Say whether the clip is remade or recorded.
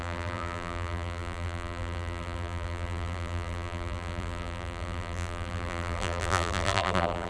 remade